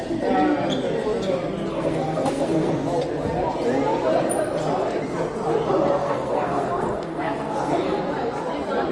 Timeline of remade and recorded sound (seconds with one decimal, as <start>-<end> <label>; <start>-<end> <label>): 0.0-1.7 recorded; 1.7-2.7 remade; 2.7-6.0 recorded; 6.0-8.0 remade; 8.0-8.9 recorded